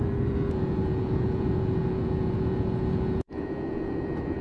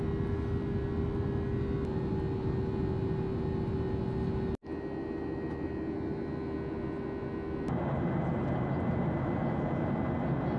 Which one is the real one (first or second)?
second